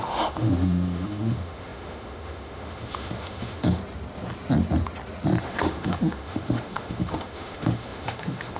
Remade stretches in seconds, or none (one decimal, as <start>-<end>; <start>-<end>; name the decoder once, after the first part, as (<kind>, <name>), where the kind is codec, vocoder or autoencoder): 0.0-3.8 (autoencoder, DAC-VAE); 5.4-8.6